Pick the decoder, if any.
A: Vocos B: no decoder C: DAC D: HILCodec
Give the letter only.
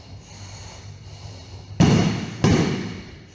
B